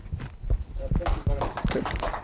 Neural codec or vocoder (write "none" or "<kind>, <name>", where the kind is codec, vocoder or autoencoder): none